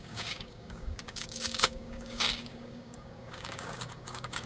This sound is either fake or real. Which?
fake